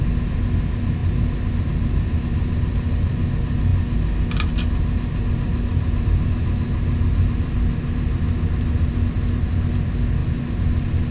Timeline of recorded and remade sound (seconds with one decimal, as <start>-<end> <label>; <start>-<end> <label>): 0.0-11.1 recorded